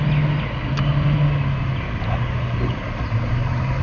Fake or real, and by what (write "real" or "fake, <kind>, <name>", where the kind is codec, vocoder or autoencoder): real